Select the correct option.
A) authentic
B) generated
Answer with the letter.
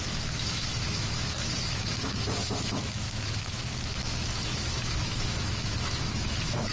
B